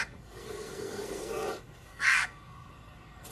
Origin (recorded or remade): remade